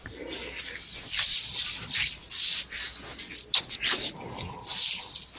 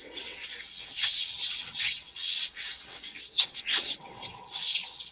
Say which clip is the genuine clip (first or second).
first